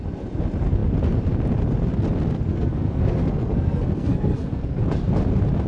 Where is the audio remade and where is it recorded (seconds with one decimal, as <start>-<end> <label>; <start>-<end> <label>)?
0.0-2.5 recorded; 2.5-4.8 remade; 4.8-5.7 recorded